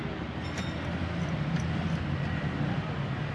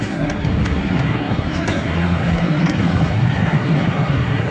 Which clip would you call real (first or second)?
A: first